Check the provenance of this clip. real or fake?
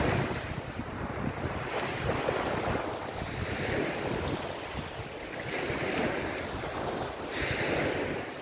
real